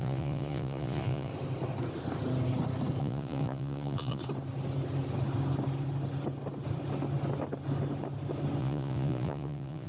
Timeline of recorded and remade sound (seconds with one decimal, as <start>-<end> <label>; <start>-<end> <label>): 0.0-1.3 remade; 1.3-3.0 recorded; 3.0-4.2 remade; 4.2-8.6 recorded; 8.6-9.9 remade